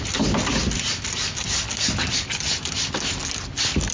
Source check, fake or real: real